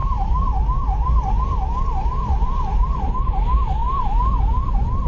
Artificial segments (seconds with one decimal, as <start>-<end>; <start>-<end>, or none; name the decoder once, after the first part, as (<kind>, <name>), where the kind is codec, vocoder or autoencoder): 0.0-3.1 (vocoder, BigVGAN v2)